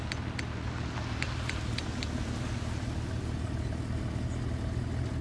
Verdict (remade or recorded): recorded